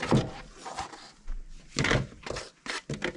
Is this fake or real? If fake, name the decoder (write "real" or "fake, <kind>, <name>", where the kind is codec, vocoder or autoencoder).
real